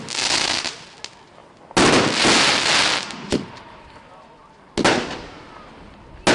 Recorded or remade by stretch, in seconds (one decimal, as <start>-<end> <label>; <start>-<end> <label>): 0.0-6.3 recorded